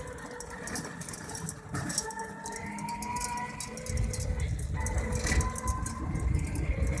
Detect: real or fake real